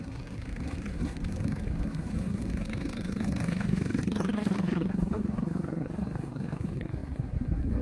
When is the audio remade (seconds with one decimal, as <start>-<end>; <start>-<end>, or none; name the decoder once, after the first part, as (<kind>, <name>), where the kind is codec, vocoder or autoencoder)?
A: 0.0-7.8 (codec, SNAC)